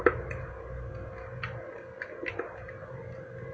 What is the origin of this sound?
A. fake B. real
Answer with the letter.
B